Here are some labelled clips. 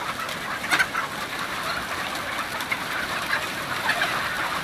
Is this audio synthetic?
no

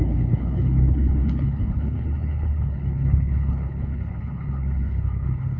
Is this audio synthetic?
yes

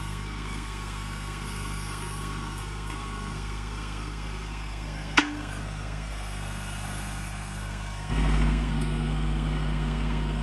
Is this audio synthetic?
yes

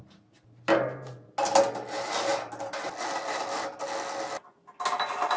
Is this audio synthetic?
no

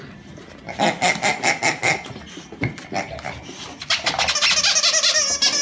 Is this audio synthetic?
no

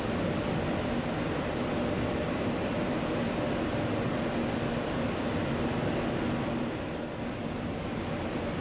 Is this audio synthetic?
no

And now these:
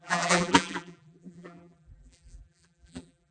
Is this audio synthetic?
yes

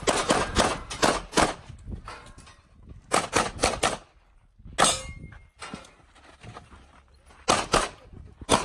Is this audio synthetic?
no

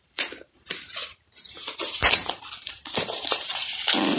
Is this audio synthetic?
yes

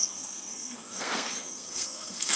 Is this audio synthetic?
yes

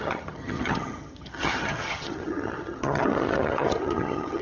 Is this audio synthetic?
yes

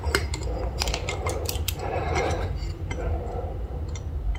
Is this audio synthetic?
no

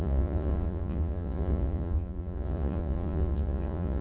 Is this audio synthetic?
yes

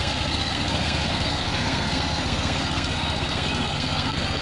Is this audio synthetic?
yes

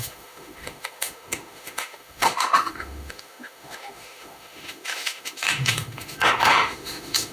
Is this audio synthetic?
yes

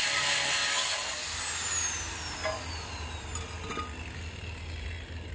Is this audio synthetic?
no